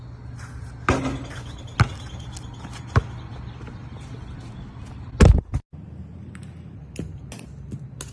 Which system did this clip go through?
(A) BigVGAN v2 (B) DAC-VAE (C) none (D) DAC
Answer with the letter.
C